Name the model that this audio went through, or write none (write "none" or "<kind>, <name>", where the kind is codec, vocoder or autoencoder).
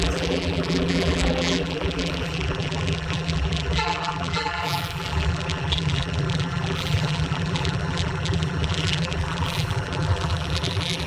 vocoder, BigVGAN v2